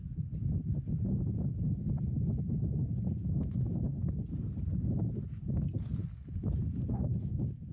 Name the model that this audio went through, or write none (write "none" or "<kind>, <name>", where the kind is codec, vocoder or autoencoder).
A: none